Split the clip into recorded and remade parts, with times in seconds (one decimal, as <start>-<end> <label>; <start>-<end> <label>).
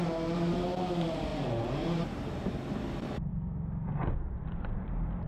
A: 0.0-3.3 remade; 3.3-3.9 recorded; 3.9-5.3 remade